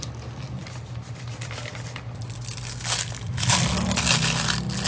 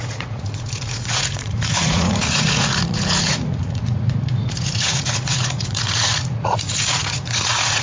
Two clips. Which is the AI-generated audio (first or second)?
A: second